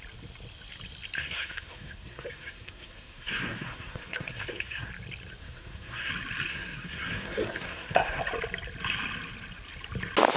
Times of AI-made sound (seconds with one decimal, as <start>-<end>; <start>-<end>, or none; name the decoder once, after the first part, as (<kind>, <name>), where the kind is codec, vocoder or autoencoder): 1.2-4.9 (codec, SNAC); 5.4-6.1; 6.5-8.2